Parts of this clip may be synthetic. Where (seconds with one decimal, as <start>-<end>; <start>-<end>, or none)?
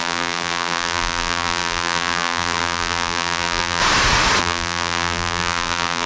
0.0-3.8; 4.4-6.1